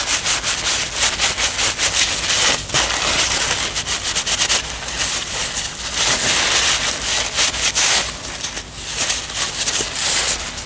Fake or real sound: real